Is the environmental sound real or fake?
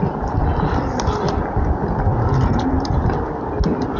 real